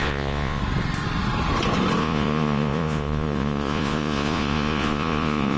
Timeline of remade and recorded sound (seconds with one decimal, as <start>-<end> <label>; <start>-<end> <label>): 0.0-0.6 remade; 0.6-2.0 recorded; 2.0-5.6 remade